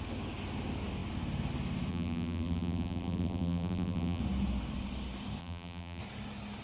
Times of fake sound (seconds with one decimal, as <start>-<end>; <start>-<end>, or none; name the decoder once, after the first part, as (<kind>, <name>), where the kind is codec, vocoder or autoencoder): 1.9-4.2 (vocoder, BigVGAN v2); 5.4-6.0